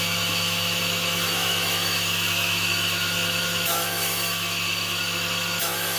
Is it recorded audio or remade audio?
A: remade